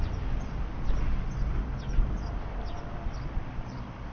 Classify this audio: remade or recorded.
remade